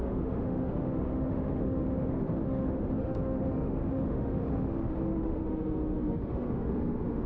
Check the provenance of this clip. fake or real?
fake